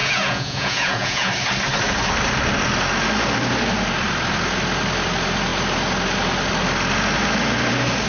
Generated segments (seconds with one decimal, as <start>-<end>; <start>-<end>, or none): 0.0-1.3